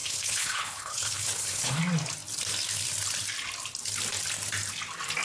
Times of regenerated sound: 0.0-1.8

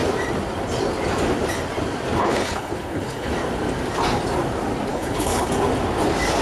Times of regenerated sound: 2.2-3.3; 4.9-5.5

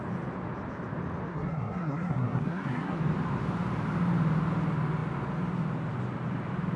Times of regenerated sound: 1.3-3.0